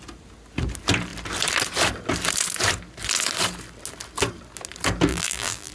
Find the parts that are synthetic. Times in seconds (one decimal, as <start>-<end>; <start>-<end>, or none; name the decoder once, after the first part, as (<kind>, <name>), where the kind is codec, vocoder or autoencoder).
5.1-5.7 (vocoder, BigVGAN v2)

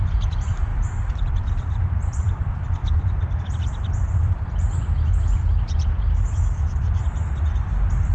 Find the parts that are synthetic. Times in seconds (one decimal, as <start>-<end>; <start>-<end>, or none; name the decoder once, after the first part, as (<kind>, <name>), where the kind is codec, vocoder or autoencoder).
0.7-2.3 (vocoder, BigVGAN v2)

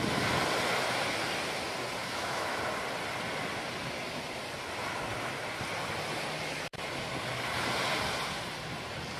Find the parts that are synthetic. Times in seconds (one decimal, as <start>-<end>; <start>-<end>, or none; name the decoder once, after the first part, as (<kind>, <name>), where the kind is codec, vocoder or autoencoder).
2.0-2.6 (autoencoder, DAC-VAE)

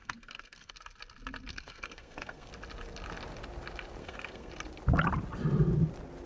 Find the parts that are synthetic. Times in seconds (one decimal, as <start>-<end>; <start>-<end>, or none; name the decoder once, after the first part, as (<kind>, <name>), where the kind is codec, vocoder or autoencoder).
0.0-0.7 (codec, SNAC); 1.5-2.5; 4.0-4.5

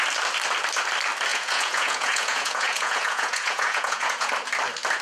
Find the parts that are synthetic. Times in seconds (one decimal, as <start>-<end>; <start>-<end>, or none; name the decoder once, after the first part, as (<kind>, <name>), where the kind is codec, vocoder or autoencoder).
1.3-4.3 (vocoder, Vocos)

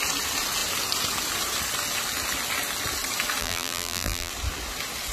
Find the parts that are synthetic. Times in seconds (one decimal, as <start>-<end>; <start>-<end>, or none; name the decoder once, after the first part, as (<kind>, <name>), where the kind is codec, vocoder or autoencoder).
3.4-4.3 (vocoder, BigVGAN v2)

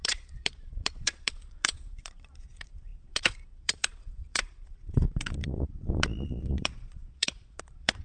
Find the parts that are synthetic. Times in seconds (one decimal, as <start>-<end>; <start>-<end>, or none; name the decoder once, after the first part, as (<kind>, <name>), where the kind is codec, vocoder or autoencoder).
0.0-8.0 (vocoder, Vocos)

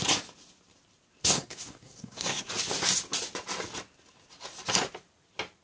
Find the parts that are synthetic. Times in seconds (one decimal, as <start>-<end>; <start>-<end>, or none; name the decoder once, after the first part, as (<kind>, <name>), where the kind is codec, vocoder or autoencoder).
1.2-2.5 (codec, SNAC)